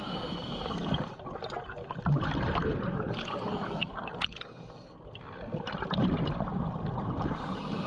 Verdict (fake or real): real